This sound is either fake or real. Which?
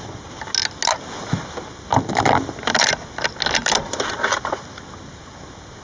real